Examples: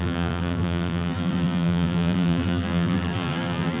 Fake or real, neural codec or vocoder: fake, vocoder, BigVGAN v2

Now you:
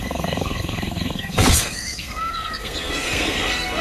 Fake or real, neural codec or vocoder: fake, codec, SNAC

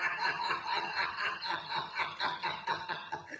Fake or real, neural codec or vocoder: fake, vocoder, HiFi-GAN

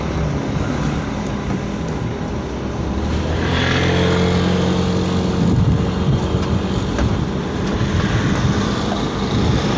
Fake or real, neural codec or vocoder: real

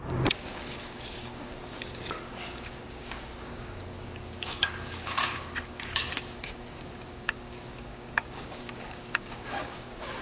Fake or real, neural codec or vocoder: fake, codec, DAC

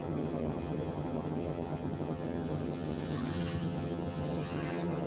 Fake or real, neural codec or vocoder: fake, vocoder, HiFi-GAN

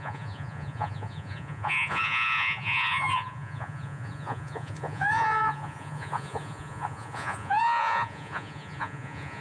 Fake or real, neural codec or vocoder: fake, vocoder, Vocos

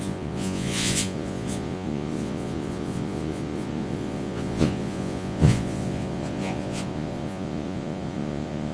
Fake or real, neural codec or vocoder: fake, vocoder, Vocos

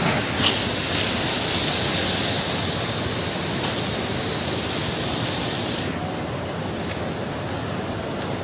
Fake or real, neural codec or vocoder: real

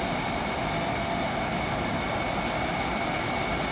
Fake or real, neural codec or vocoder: real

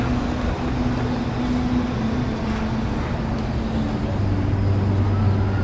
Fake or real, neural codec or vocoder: real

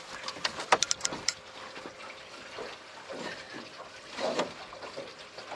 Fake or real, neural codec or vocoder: real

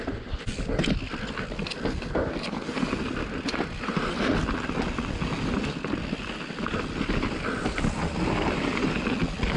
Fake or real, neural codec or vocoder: real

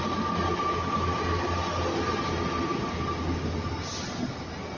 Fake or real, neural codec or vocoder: real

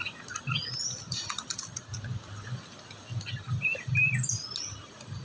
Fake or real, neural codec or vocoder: real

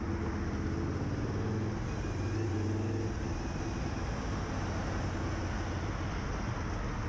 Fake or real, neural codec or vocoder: real